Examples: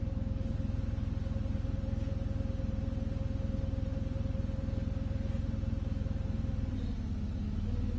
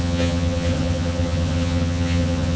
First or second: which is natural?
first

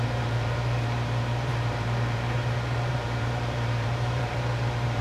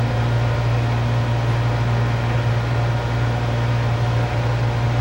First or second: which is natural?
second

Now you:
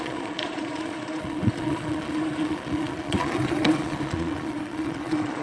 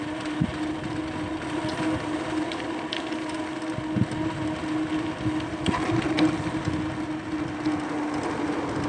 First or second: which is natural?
second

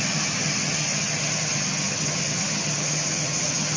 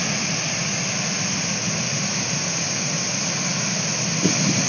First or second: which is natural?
second